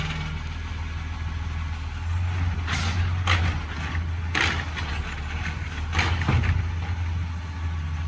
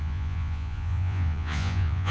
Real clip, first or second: first